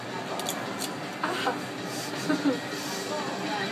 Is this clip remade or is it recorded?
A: recorded